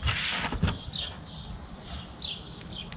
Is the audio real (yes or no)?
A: yes